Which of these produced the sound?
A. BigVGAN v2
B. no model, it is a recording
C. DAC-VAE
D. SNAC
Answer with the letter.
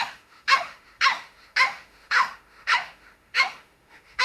C